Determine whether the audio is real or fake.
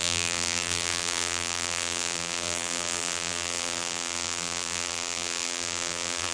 fake